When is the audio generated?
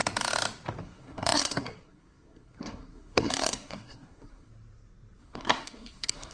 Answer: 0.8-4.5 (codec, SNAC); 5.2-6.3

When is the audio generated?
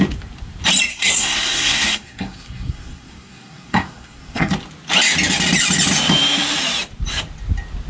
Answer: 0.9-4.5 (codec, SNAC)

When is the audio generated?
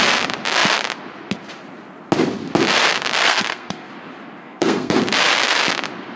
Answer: 3.2-3.9 (codec, SNAC); 4.4-5.0